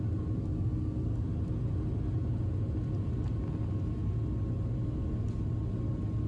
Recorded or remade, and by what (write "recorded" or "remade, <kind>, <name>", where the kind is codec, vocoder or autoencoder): recorded